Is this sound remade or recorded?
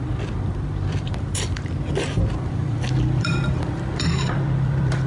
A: remade